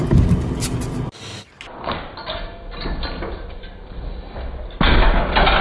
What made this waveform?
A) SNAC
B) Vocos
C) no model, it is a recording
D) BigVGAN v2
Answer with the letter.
C